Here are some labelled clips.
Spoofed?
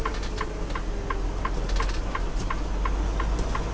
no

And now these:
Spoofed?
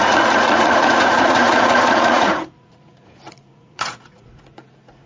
yes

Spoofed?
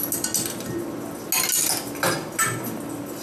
no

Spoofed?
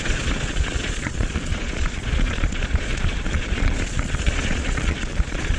yes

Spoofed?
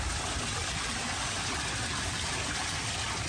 no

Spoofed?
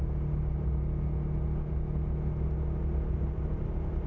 no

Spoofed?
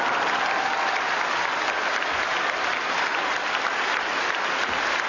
no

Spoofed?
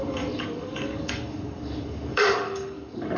yes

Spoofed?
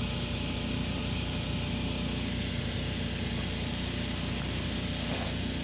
no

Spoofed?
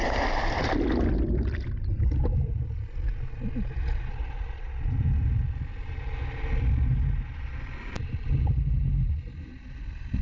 no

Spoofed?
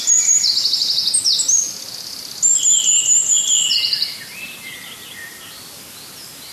no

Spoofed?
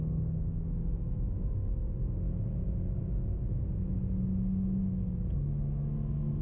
no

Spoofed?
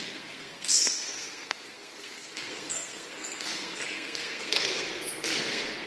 yes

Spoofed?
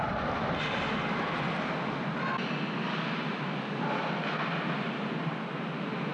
no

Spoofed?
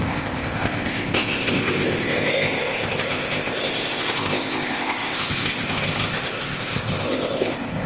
yes